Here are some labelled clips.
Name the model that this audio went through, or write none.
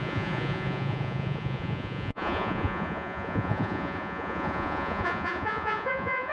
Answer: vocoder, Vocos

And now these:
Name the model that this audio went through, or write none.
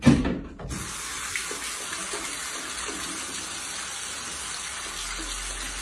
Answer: none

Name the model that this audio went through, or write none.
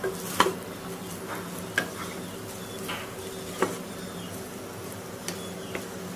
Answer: none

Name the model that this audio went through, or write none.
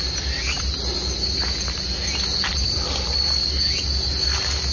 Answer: none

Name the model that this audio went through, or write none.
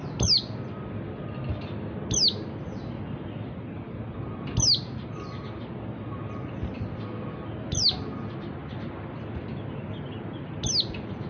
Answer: none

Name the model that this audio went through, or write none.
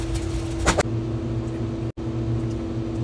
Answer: none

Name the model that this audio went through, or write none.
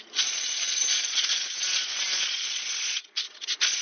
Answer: vocoder, Vocos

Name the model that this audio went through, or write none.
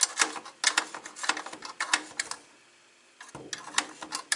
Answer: none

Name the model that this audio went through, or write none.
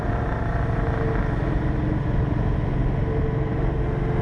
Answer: none